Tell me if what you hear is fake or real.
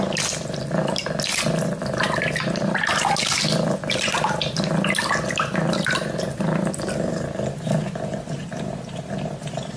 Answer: real